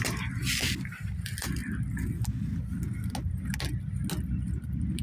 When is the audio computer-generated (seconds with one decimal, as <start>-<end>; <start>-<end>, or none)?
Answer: none

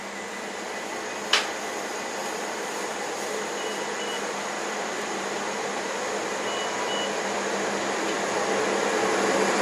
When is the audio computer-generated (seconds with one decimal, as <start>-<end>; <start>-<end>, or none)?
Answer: 2.2-3.1; 3.7-6.2

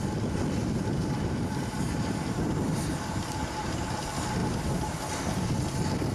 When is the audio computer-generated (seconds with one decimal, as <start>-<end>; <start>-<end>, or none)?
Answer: 0.6-3.9

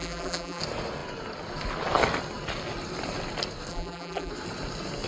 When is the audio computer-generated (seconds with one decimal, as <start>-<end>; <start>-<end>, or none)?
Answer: 0.0-0.6; 3.7-4.3

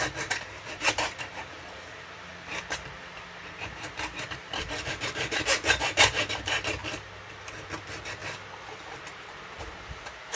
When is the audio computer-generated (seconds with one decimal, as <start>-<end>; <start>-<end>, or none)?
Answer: 0.0-2.3; 3.4-6.8; 7.3-8.2; 8.8-10.4

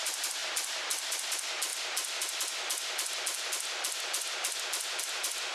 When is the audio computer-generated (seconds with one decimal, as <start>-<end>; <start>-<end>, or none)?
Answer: none